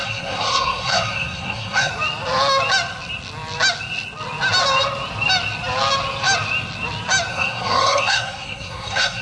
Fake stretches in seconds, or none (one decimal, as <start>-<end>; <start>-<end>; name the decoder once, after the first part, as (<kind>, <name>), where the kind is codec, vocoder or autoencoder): 0.0-1.9 (codec, SNAC); 7.3-9.2